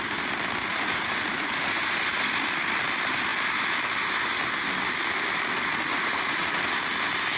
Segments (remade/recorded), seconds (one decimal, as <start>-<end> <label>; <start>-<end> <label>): 0.0-0.7 recorded; 0.7-2.1 remade; 2.1-5.9 recorded; 5.9-6.7 remade; 6.7-7.4 recorded